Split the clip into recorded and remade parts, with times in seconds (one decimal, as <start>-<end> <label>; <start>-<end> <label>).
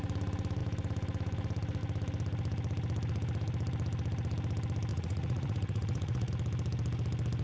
0.0-4.9 recorded; 4.9-6.3 remade; 6.3-7.4 recorded